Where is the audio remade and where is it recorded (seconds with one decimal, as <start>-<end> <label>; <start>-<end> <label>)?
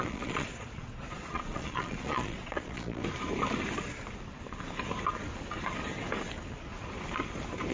0.0-3.0 remade; 3.0-7.7 recorded